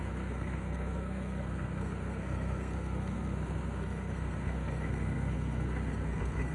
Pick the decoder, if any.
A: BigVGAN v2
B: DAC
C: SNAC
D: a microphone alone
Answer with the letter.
C